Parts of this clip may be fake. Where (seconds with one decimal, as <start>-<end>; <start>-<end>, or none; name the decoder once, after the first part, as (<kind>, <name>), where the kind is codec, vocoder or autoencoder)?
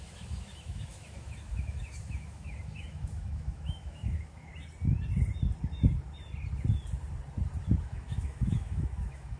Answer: 0.0-4.5 (autoencoder, DAC-VAE); 7.8-9.4